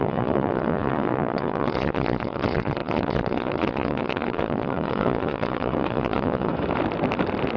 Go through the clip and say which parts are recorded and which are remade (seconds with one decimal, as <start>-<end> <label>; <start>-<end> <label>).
0.0-6.5 remade; 6.5-7.6 recorded